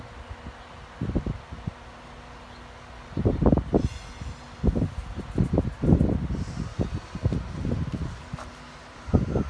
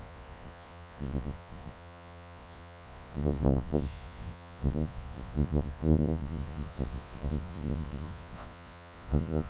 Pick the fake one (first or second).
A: second